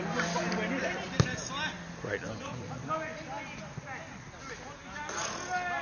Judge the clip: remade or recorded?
recorded